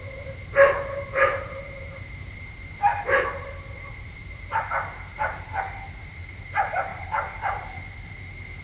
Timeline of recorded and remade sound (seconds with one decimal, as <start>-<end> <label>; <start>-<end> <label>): 0.0-8.6 remade